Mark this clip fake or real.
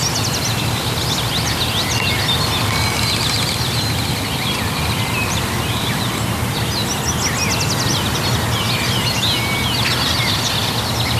real